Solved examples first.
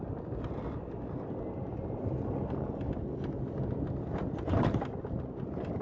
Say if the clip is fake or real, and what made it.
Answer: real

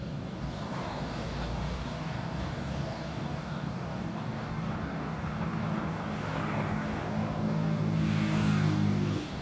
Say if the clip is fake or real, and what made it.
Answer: fake, codec, DAC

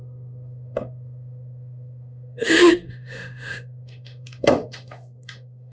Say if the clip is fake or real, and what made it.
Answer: fake, autoencoder, DAC-VAE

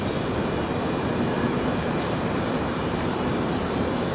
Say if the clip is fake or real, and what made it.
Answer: fake, vocoder, BigVGAN v2